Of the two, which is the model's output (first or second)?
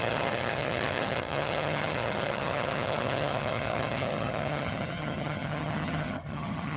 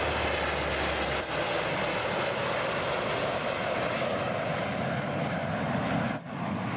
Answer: first